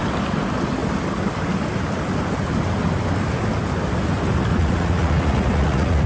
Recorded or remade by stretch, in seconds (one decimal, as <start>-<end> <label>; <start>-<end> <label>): 0.0-4.5 recorded; 4.5-6.1 remade